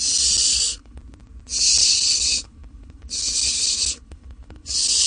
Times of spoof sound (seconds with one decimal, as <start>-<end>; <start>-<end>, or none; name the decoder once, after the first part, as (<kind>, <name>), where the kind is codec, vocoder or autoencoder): 0.5-1.0 (codec, HILCodec); 1.8-5.1